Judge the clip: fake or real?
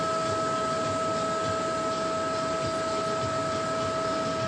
real